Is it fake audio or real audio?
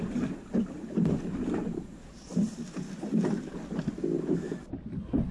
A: real